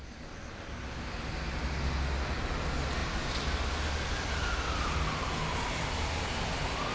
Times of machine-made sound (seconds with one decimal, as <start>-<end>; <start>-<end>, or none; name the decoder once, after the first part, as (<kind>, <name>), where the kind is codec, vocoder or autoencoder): none